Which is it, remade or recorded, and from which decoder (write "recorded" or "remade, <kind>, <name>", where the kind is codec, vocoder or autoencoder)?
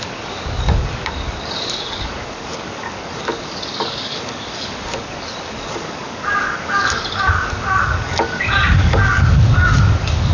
remade, codec, DAC